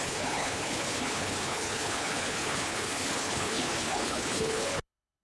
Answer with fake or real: fake